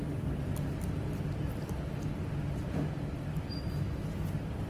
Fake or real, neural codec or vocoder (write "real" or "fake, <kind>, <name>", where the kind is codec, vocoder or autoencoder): real